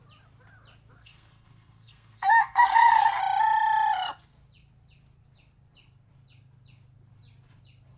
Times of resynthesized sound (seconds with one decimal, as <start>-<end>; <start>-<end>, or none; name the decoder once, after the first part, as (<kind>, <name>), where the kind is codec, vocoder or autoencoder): 1.0-3.2 (codec, SNAC)